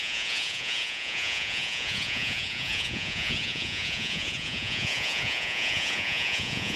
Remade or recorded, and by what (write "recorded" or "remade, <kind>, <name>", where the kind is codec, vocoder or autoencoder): remade, vocoder, Vocos